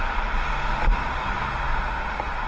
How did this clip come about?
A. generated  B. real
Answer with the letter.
B